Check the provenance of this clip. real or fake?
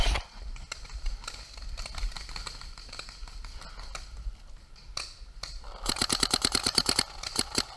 real